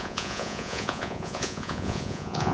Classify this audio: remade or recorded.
remade